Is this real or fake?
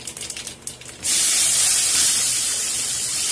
real